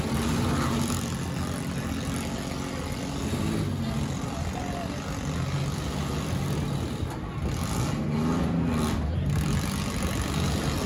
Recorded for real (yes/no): yes